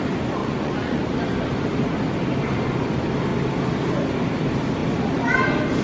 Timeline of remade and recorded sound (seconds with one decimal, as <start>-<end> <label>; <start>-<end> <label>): 0.0-0.4 recorded; 0.4-1.0 remade; 1.0-5.8 recorded